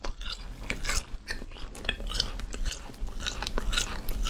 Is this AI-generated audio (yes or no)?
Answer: no